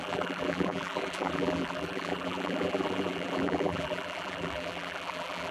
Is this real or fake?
fake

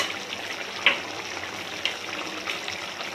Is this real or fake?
real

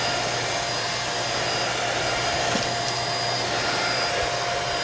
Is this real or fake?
real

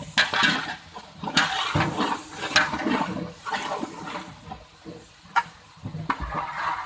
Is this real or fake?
real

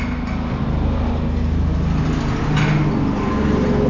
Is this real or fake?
real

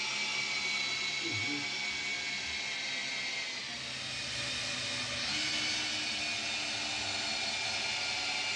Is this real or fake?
real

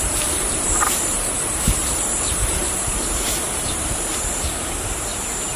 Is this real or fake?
fake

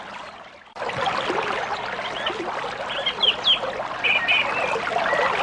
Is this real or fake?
real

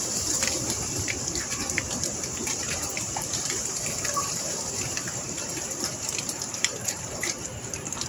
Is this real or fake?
fake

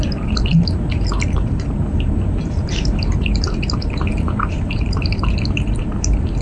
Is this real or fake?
fake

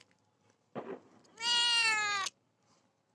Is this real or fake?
real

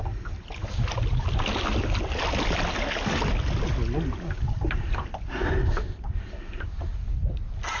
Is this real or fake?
real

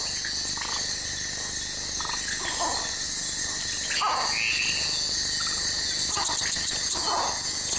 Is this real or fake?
real